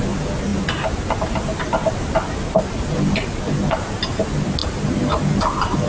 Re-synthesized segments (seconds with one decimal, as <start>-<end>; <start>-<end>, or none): none